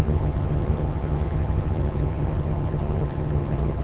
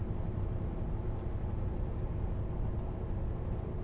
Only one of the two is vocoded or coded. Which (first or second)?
first